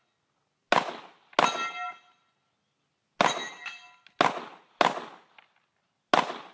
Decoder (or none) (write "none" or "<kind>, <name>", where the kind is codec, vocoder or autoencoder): none